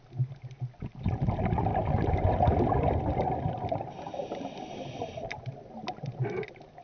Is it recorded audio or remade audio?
recorded